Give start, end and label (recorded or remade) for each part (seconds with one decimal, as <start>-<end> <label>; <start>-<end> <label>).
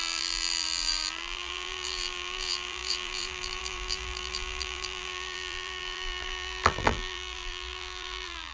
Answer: 0.0-8.5 remade